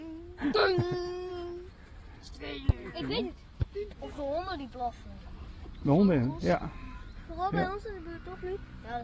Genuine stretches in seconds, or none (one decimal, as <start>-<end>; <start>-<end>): 0.0-3.4; 4.9-9.0